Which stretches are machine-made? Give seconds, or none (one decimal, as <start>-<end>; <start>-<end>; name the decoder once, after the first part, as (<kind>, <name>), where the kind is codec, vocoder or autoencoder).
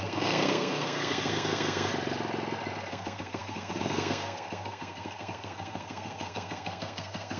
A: 0.0-1.9 (codec, SNAC); 2.9-7.4